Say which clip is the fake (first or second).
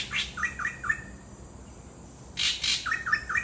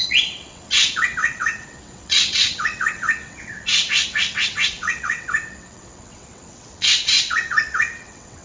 second